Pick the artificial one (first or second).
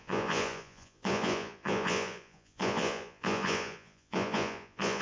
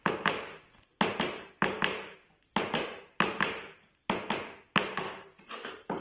first